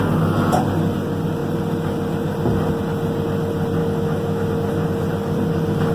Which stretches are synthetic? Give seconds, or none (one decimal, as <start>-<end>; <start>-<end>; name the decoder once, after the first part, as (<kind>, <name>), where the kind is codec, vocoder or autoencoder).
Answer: 3.8-4.5 (autoencoder, DAC-VAE)